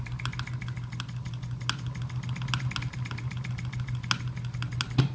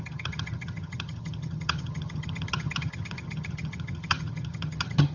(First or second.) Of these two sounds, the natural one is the first